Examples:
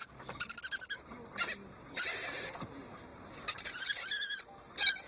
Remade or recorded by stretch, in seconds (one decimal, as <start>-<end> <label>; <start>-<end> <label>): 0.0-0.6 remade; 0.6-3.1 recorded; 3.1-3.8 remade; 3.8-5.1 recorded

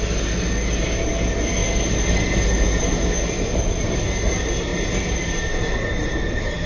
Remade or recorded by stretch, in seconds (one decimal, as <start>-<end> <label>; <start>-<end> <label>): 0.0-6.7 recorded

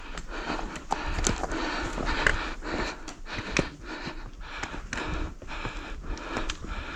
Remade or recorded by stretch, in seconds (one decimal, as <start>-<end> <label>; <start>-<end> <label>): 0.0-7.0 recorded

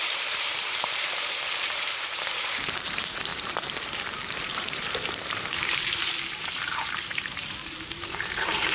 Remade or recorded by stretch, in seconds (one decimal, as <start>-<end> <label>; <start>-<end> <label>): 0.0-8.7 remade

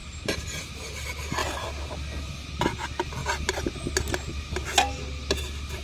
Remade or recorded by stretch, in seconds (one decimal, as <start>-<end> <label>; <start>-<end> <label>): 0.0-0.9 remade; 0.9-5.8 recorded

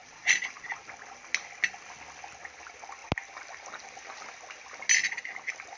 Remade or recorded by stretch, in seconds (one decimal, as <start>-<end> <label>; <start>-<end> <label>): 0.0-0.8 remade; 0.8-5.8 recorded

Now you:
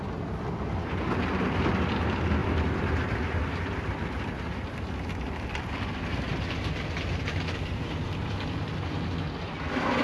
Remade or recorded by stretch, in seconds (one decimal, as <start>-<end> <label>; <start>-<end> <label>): 0.0-2.4 recorded; 2.4-4.0 remade; 4.0-10.0 recorded

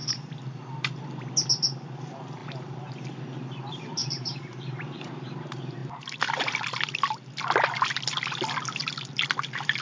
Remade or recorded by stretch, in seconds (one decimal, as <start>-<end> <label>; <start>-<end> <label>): 0.0-2.4 recorded; 2.4-2.9 remade; 2.9-4.0 recorded; 4.0-5.1 remade; 5.1-9.8 recorded